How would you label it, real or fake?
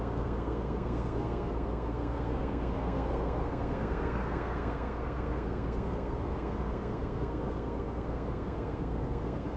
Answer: fake